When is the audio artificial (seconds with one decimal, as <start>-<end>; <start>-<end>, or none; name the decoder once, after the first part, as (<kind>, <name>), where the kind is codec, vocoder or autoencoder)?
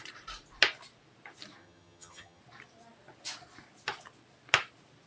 1.6-2.4 (vocoder, HiFi-GAN)